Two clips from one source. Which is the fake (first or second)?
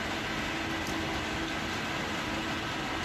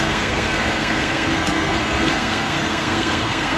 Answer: second